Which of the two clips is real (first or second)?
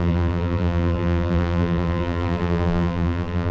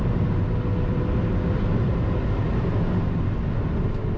second